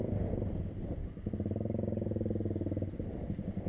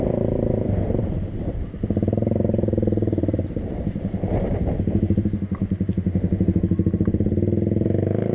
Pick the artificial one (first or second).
second